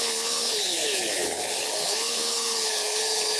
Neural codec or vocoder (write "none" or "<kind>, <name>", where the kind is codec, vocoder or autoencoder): codec, HILCodec